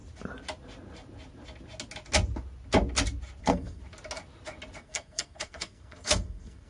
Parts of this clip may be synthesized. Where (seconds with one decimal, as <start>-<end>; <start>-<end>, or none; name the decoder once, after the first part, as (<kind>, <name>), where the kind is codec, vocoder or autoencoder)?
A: 3.4-3.8 (codec, SNAC); 4.8-6.7

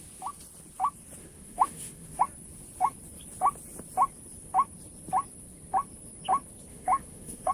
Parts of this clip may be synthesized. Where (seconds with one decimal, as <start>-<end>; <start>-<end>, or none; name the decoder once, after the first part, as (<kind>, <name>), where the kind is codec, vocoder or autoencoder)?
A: 1.2-2.2 (autoencoder, DAC-VAE); 6.7-7.5

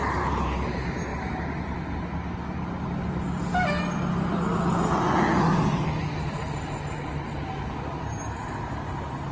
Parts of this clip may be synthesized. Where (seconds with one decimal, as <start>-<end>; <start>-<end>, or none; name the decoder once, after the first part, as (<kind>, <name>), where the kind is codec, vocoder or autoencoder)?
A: none

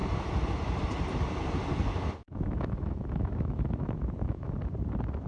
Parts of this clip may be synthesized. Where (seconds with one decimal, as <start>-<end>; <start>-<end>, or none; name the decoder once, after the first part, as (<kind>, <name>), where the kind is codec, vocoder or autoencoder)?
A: 2.2-4.5 (autoencoder, DAC-VAE)

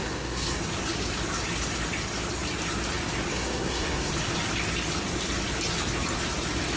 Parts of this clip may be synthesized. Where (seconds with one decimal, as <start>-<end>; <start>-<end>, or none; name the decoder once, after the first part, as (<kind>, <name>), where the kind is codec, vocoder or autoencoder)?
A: 0.0-0.6 (codec, SNAC); 3.3-4.1